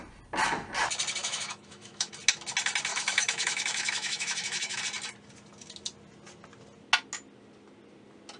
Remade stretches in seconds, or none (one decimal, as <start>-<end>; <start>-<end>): 1.2-2.1; 2.9-4.8